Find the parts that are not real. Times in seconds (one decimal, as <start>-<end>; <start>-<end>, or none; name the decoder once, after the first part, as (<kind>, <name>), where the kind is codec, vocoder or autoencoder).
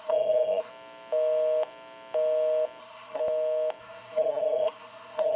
0.0-0.7 (codec, SNAC); 2.8-3.2; 3.8-5.4